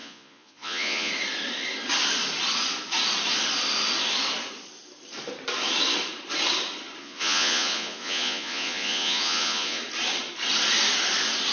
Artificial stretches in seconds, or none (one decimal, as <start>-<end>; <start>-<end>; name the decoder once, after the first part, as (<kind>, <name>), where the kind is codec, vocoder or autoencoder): 0.0-1.1 (vocoder, Vocos); 7.0-9.8